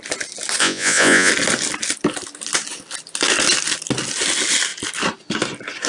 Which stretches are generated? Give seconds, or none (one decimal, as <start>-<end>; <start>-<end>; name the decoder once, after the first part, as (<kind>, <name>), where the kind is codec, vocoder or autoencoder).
0.6-1.3 (vocoder, Vocos)